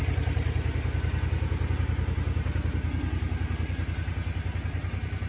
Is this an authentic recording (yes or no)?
yes